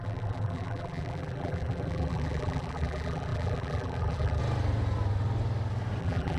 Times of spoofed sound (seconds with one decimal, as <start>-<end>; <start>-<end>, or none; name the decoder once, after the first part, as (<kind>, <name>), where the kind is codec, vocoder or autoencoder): 0.0-4.4 (vocoder, BigVGAN v2); 6.0-6.4